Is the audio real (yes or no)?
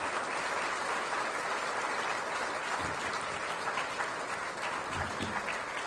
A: yes